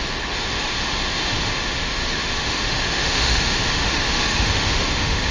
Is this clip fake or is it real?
fake